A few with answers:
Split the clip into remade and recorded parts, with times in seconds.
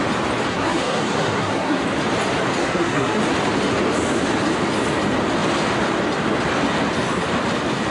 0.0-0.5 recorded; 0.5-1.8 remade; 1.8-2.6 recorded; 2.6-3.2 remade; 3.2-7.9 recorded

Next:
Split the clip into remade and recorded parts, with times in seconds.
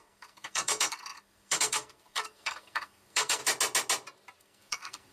0.0-3.4 remade; 3.4-4.4 recorded; 4.4-5.1 remade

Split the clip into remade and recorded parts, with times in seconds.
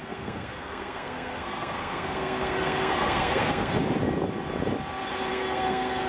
0.0-3.7 remade; 3.7-5.3 recorded; 5.3-6.1 remade